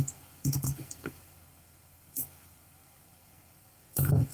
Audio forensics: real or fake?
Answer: fake